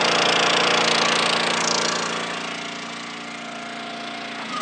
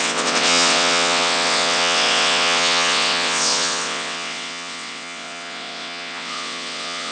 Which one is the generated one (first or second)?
second